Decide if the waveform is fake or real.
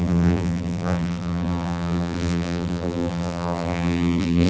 fake